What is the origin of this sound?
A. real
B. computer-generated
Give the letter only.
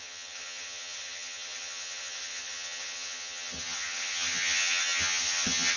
B